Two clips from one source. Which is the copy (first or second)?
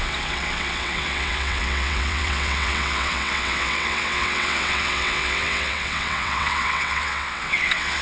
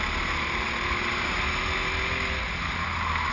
first